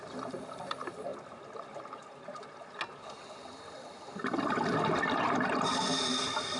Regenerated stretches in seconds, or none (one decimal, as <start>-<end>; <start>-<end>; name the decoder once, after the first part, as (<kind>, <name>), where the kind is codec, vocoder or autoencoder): 0.0-1.1 (vocoder, BigVGAN v2); 5.1-6.6